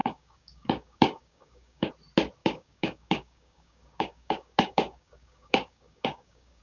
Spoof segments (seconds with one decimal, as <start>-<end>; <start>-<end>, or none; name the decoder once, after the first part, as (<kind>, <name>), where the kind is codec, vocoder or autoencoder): 0.0-1.9 (codec, DAC); 2.4-6.6